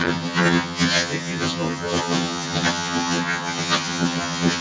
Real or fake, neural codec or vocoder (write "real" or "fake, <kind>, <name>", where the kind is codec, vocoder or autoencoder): fake, vocoder, HiFi-GAN